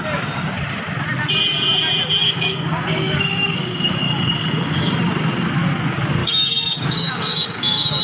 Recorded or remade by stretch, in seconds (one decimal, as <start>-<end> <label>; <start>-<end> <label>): 0.0-2.2 recorded; 2.2-4.9 remade; 4.9-6.2 recorded; 6.2-8.0 remade